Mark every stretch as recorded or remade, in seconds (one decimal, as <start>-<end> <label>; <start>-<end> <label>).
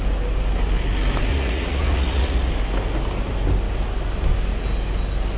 0.0-1.3 recorded; 1.3-2.5 remade; 2.5-5.4 recorded